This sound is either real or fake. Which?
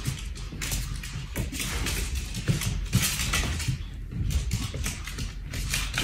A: real